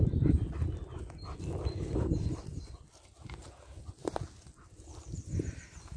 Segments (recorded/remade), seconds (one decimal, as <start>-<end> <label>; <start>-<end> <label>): 0.0-6.0 recorded